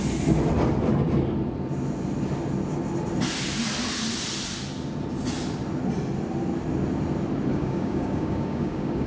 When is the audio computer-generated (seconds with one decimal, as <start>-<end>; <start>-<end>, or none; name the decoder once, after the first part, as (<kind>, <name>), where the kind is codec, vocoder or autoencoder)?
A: 7.5-9.1 (codec, DAC)